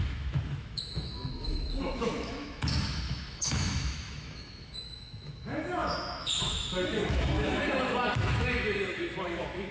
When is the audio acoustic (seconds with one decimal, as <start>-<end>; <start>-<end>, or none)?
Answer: none

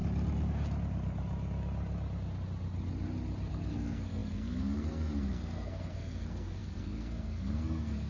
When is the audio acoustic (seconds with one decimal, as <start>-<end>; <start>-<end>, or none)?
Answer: 0.0-3.5

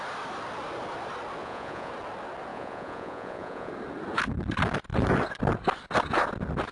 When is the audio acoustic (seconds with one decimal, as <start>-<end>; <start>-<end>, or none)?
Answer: 0.0-1.4; 1.9-2.5; 3.7-6.7

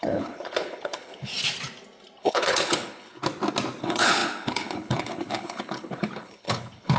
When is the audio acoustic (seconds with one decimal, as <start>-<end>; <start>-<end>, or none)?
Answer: 1.3-2.2; 3.2-3.8

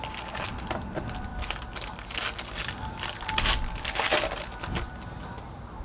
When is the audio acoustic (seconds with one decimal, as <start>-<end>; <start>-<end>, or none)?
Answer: 0.0-5.8

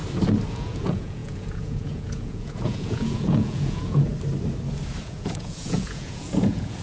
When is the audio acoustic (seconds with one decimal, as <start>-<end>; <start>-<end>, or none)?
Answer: 0.0-0.5; 4.1-5.0